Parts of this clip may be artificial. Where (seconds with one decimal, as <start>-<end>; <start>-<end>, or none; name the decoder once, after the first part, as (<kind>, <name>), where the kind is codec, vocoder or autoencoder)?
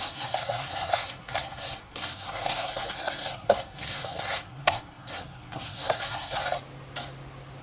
0.0-6.4 (codec, SNAC)